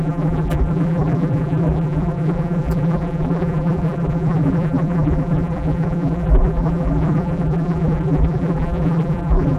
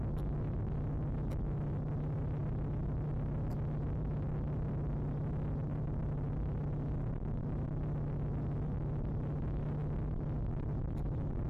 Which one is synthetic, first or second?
first